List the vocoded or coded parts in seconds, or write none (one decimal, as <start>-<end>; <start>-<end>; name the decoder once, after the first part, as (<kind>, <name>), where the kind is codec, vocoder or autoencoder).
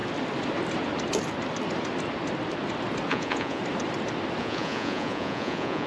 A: 3.1-3.6 (vocoder, Vocos); 4.4-5.9